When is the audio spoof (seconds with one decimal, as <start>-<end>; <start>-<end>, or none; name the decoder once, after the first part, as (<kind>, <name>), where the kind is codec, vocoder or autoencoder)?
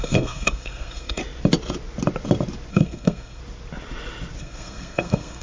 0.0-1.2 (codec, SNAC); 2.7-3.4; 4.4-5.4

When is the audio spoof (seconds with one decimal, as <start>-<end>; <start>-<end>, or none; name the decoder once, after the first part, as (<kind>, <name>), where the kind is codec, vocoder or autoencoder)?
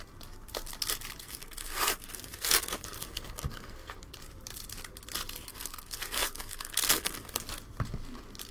1.2-4.0 (codec, SNAC); 5.5-7.4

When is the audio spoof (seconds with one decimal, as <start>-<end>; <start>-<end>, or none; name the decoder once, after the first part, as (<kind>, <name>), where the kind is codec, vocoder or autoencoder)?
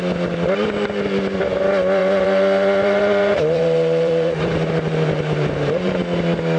2.0-6.0 (vocoder, BigVGAN v2)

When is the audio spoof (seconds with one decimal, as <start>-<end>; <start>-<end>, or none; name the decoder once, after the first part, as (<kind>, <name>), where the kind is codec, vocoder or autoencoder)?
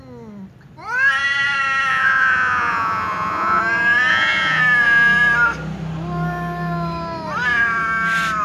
1.9-3.6 (vocoder, Vocos); 4.1-4.6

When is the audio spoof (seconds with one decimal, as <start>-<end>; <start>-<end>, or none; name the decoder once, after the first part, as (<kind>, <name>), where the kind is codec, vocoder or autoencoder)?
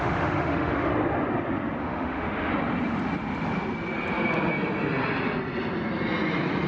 0.0-0.9 (autoencoder, DAC-VAE); 1.8-2.5